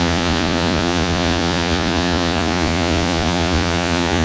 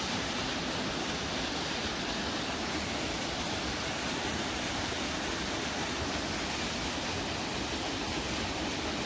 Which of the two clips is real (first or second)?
second